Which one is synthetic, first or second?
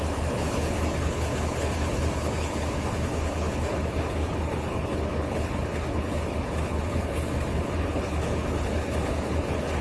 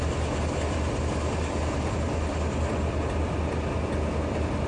first